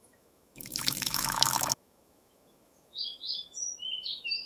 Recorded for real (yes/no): no